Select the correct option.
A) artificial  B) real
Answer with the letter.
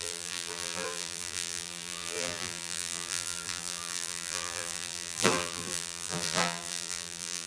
A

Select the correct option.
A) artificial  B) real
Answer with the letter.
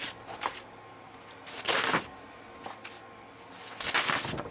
B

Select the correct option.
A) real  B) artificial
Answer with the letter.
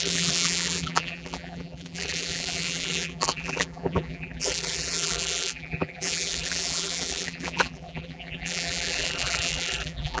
B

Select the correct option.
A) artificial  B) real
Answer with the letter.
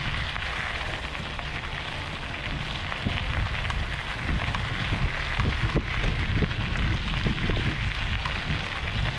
B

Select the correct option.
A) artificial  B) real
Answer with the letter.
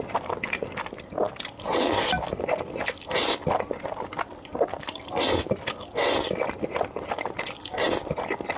B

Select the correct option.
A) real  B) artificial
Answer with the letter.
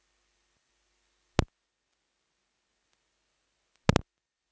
A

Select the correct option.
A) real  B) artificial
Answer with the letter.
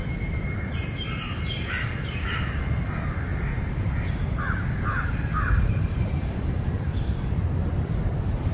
B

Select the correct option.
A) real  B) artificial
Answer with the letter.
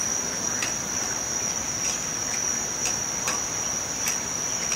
A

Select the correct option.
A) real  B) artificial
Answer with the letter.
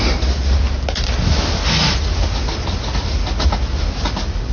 A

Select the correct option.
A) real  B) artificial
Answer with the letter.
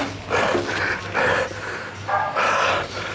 A